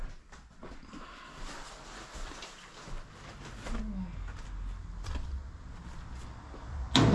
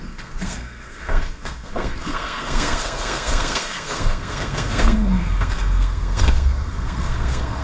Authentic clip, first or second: first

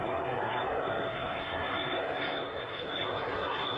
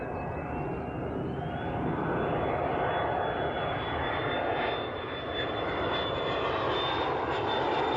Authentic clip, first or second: second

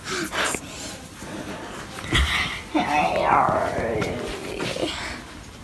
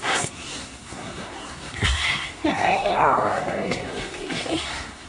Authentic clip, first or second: first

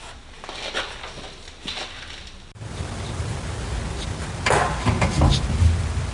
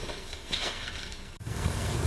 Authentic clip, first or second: first